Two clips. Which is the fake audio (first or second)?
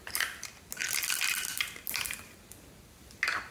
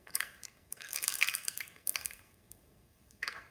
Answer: second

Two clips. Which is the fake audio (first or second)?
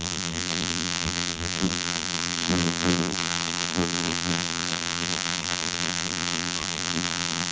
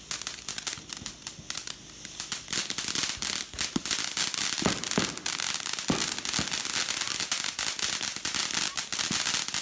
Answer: first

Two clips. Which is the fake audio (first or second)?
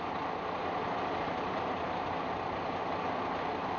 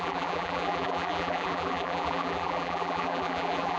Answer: second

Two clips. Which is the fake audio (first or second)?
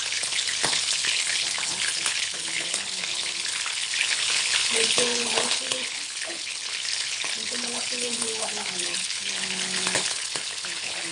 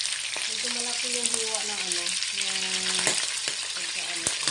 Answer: first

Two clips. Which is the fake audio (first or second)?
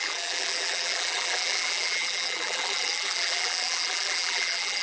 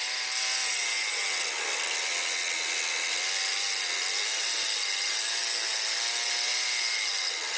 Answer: first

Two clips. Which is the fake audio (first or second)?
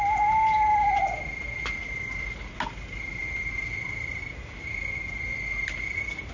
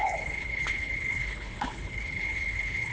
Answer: second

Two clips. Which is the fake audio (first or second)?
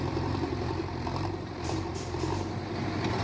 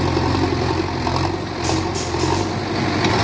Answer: first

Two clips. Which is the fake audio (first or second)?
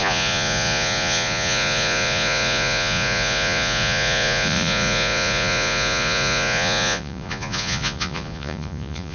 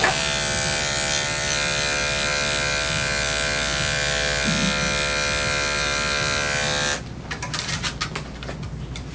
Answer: first